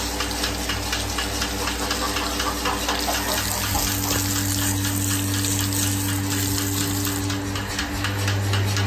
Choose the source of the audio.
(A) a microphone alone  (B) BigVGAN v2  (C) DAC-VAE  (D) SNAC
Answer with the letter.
A